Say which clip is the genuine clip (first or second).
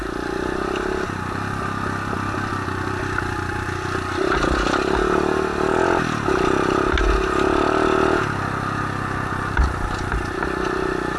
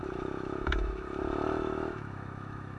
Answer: first